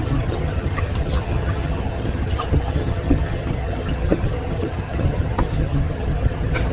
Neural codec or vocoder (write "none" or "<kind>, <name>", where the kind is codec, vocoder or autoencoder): vocoder, HiFi-GAN